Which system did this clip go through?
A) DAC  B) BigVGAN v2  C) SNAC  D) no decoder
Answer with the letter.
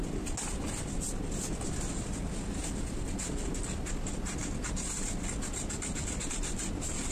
D